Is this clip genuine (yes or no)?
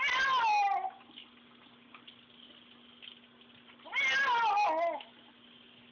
yes